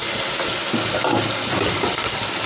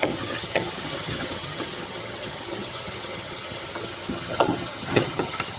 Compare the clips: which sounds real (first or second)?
first